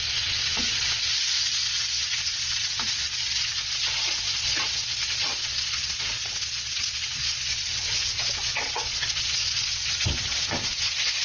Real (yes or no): no